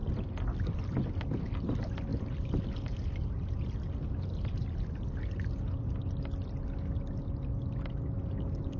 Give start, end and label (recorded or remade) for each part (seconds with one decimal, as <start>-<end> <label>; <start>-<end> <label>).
0.0-8.8 recorded